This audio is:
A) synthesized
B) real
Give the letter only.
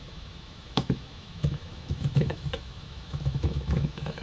A